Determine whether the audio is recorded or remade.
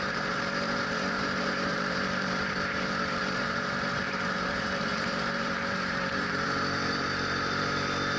remade